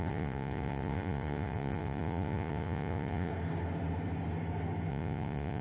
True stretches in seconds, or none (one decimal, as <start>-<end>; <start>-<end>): 3.3-4.9